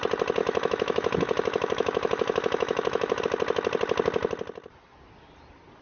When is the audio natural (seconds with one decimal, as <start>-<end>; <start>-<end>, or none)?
0.0-0.4; 3.2-5.8

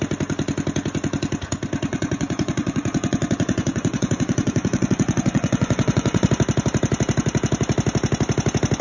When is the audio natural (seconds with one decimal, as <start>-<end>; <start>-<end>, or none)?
0.0-1.9; 6.3-8.8

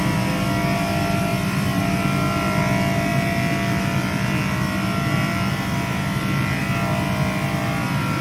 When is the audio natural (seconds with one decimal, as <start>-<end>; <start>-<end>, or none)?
0.0-1.3; 1.8-8.2

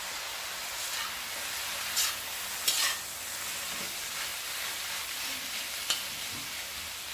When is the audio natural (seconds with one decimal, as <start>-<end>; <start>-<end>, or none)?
0.0-7.1

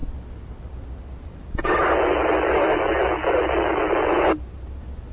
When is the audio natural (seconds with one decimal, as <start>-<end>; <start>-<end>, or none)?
0.0-5.1